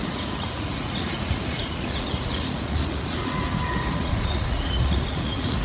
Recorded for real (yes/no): no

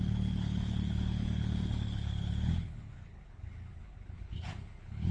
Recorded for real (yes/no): no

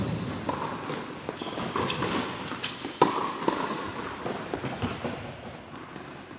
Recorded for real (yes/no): yes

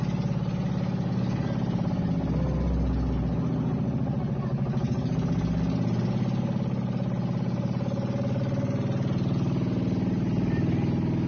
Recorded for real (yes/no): yes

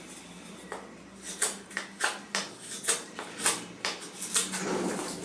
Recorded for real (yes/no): yes